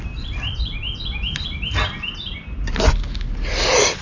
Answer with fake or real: real